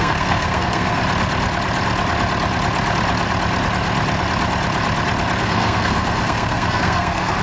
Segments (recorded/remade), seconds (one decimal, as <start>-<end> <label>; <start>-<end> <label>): 0.0-1.0 remade; 1.0-5.4 recorded; 5.4-7.4 remade